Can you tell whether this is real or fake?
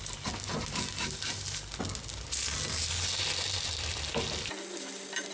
real